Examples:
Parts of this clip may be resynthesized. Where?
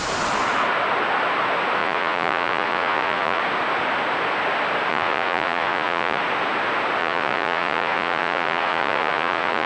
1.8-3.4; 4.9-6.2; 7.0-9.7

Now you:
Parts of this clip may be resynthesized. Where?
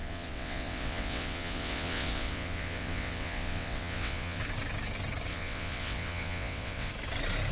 0.0-4.4; 5.3-6.9